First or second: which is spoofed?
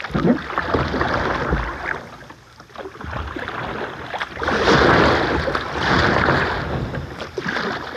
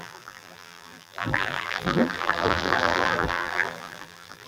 second